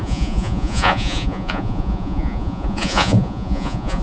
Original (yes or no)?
no